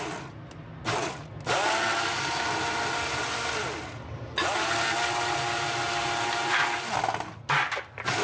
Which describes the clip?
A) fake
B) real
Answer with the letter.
B